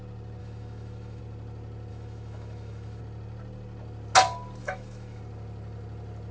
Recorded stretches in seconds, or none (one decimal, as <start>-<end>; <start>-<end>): 0.0-0.4; 1.2-1.9; 3.0-4.6; 5.2-6.3